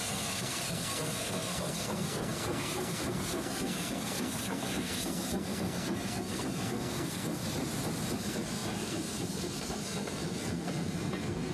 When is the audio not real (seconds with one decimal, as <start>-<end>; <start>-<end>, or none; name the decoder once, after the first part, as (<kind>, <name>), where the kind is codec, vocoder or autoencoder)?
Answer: 0.0-7.4 (codec, SNAC); 8.2-11.5